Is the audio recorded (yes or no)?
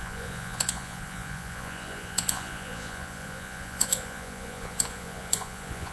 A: no